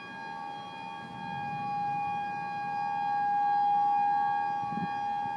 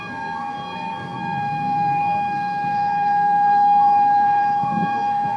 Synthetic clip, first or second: second